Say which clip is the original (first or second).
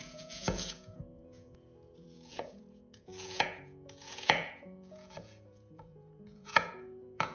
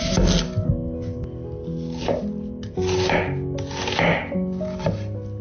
second